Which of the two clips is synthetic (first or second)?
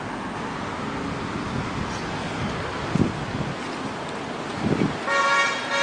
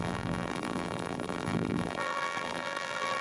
second